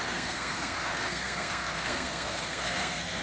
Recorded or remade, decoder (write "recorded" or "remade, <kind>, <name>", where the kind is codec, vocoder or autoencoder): remade, codec, SNAC